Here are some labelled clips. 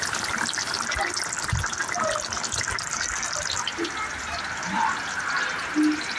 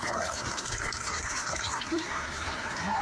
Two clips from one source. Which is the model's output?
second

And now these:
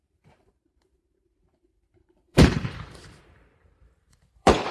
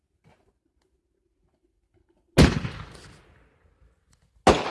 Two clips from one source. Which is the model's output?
first